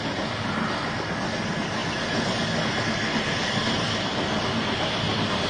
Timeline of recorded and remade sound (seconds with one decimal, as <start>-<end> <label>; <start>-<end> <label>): 0.0-5.5 recorded